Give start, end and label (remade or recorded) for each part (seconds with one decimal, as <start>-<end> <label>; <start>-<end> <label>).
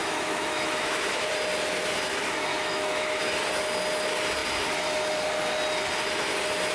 0.0-1.3 remade; 1.3-2.5 recorded; 2.5-3.2 remade; 3.2-6.7 recorded